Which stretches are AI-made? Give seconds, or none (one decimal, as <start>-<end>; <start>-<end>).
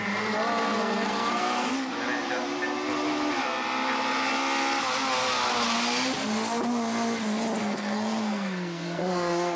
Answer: 0.8-1.7; 7.6-9.6